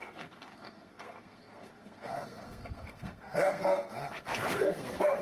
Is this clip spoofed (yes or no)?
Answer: yes